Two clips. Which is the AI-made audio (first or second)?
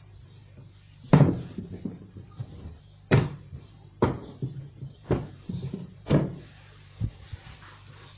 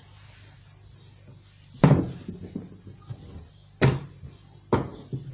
first